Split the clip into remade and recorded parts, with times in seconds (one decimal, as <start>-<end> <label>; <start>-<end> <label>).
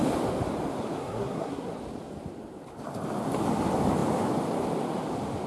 0.0-1.0 recorded; 1.0-1.7 remade; 1.7-5.5 recorded